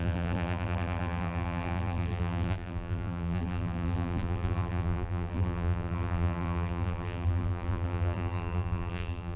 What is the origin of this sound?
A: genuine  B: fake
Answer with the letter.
B